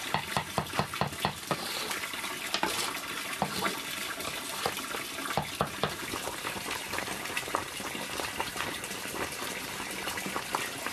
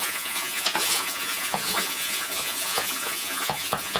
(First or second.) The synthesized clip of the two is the second